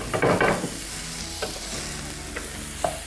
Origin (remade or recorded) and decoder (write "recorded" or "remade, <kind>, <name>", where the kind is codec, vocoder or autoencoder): recorded